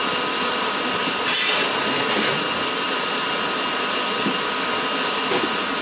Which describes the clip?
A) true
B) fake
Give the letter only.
A